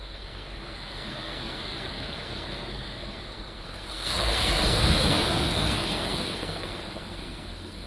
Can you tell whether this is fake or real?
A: fake